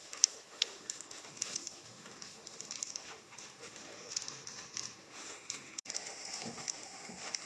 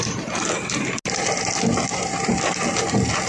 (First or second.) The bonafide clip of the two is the second